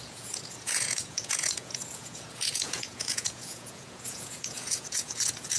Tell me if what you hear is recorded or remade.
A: remade